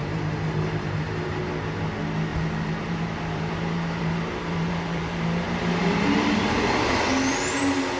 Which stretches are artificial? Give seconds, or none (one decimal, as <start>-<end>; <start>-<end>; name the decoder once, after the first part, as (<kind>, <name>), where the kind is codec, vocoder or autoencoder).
0.0-1.4 (vocoder, BigVGAN v2); 2.3-7.0